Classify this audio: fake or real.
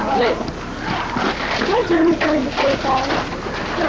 real